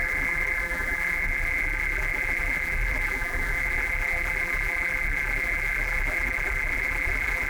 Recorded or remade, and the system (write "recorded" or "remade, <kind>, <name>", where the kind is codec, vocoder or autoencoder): remade, vocoder, BigVGAN v2